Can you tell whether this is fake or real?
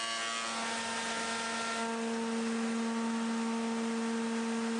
real